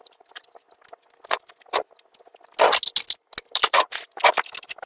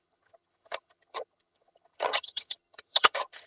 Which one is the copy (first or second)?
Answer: second